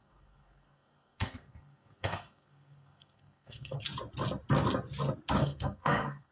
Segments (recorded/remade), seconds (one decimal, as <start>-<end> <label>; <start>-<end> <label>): 0.0-3.8 remade; 3.8-5.4 recorded; 5.4-6.3 remade